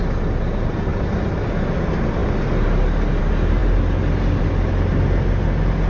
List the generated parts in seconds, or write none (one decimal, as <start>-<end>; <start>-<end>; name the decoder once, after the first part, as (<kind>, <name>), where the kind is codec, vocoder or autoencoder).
none